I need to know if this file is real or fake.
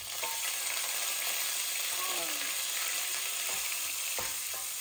real